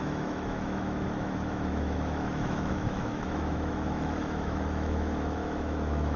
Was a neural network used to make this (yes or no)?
yes